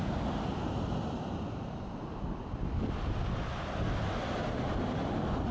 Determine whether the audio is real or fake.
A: real